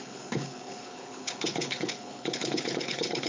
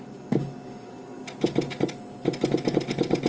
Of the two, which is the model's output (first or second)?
first